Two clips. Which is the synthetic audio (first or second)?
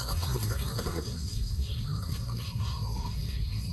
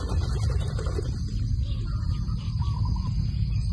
first